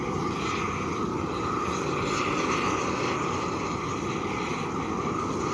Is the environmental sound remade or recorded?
recorded